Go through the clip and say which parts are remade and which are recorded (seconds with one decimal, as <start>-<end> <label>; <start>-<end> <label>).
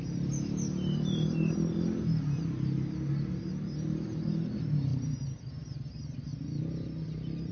0.0-7.5 recorded